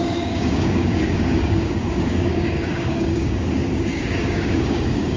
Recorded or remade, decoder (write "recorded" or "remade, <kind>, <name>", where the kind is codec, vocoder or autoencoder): remade, codec, DAC